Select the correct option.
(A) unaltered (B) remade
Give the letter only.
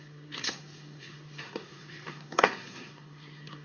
B